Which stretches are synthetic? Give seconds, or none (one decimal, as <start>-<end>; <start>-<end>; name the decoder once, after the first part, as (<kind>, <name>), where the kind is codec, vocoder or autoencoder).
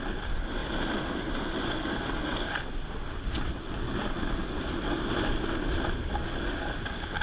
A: none